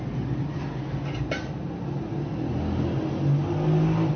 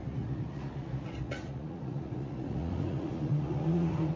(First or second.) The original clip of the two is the first